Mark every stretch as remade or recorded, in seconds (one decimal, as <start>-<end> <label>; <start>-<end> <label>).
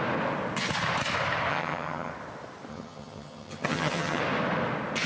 0.0-1.5 recorded; 1.5-2.1 remade; 2.1-2.7 recorded; 2.7-4.2 remade; 4.2-5.1 recorded